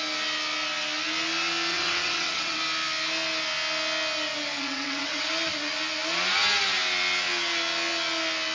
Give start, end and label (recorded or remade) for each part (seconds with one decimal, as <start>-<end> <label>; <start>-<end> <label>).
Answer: 0.0-1.7 recorded; 1.7-2.6 remade; 2.6-4.6 recorded; 4.6-5.3 remade; 5.3-8.5 recorded